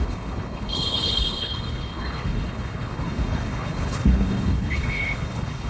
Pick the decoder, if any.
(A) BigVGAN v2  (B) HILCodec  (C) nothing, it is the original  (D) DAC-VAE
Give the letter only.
B